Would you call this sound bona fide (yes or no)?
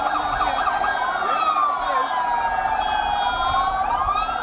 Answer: yes